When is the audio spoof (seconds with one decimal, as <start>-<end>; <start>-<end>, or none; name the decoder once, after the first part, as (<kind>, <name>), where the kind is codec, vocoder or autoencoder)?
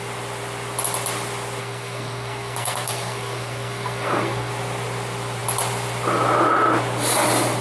1.6-4.5 (codec, SNAC)